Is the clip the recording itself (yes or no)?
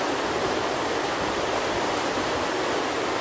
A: yes